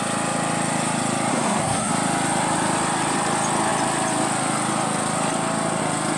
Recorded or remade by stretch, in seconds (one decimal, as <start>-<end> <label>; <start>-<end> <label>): 0.0-1.3 recorded; 1.3-1.9 remade; 1.9-6.2 recorded